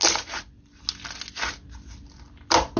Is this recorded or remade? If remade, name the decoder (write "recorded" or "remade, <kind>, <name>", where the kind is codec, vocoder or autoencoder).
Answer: recorded